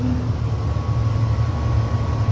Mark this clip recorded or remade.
recorded